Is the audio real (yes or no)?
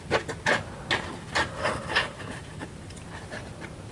yes